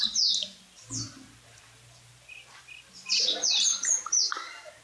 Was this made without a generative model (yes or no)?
yes